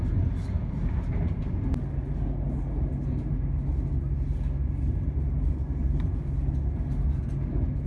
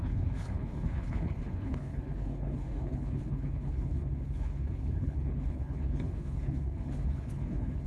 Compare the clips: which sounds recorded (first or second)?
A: first